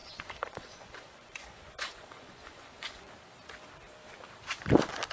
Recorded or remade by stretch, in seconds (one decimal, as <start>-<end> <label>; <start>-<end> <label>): 0.0-3.1 remade; 3.1-5.1 recorded